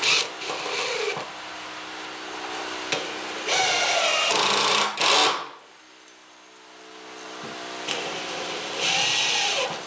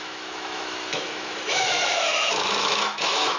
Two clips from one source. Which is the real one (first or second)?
first